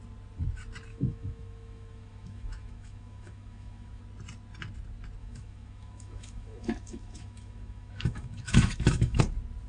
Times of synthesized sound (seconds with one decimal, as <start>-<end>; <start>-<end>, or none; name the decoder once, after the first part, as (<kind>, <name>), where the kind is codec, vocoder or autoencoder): 0.9-4.0 (autoencoder, DAC-VAE); 5.2-9.2